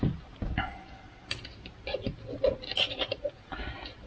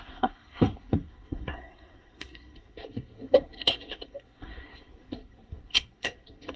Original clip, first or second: first